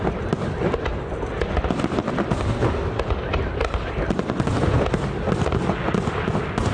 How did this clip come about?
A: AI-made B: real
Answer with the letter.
B